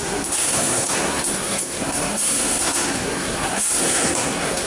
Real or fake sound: fake